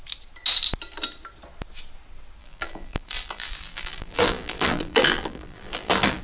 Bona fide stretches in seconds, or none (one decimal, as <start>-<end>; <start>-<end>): 0.0-2.4